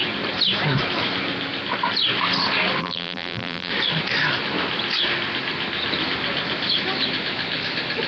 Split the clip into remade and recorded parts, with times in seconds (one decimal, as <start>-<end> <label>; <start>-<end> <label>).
0.0-2.8 recorded; 2.8-3.7 remade; 3.7-8.1 recorded